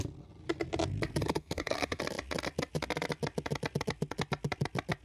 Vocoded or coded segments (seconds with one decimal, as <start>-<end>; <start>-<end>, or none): 1.2-2.0